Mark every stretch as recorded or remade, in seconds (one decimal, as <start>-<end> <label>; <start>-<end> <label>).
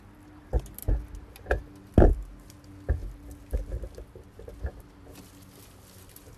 0.0-6.4 recorded